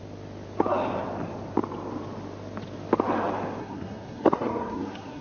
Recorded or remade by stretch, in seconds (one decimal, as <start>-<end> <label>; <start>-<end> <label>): 0.0-3.6 recorded; 3.6-5.2 remade